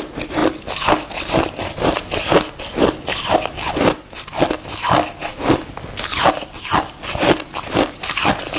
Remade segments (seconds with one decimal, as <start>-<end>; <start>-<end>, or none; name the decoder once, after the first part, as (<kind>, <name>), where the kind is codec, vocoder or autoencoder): none